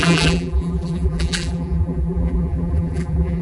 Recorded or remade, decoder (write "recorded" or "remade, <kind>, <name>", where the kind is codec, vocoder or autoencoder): remade, vocoder, BigVGAN v2